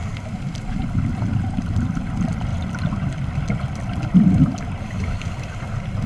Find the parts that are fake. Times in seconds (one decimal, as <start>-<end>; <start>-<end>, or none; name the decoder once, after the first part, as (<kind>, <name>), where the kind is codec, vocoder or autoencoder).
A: 0.0-0.8 (vocoder, BigVGAN v2); 1.6-6.1